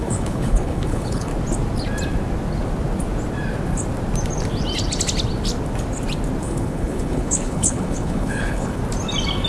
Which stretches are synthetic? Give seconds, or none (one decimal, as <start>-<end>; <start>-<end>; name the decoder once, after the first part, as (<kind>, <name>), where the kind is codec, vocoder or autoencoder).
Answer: 0.0-1.3 (codec, HILCodec); 6.4-8.8